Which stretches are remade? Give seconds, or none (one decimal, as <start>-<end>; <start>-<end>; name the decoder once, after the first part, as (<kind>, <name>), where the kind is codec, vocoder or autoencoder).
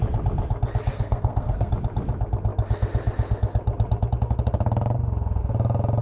0.9-1.7 (codec, SNAC)